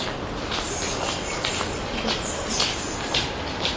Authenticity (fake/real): real